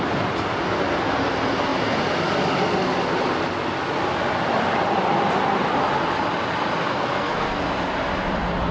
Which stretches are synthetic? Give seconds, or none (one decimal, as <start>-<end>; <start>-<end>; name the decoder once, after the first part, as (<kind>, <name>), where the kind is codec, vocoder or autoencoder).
6.9-7.6 (codec, SNAC)